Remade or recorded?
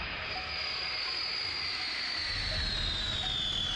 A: recorded